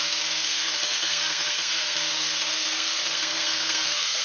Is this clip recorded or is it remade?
remade